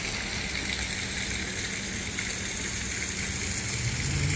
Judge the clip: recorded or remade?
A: recorded